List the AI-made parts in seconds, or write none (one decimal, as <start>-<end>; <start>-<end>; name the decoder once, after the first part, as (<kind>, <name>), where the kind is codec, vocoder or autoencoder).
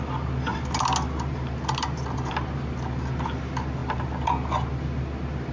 none